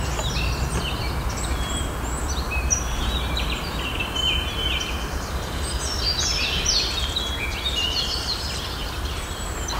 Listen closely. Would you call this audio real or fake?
real